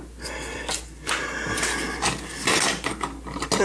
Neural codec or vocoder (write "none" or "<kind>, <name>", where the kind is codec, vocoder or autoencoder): none